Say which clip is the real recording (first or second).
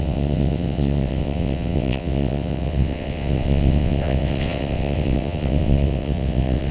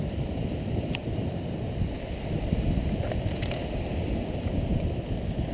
second